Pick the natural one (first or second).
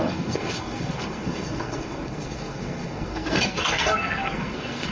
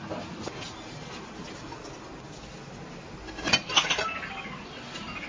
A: second